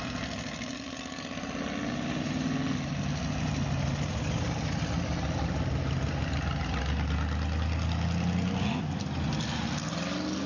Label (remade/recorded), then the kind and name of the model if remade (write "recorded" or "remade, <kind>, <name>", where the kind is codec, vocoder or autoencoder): recorded